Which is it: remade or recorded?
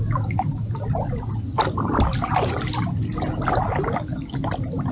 recorded